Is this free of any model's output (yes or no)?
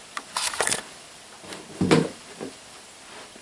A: yes